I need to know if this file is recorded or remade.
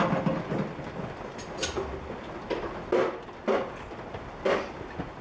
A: recorded